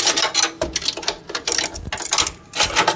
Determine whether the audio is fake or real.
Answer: real